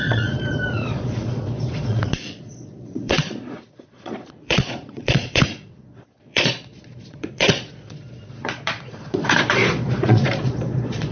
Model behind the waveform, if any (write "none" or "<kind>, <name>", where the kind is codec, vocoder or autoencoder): vocoder, Vocos